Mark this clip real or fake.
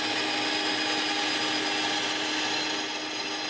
real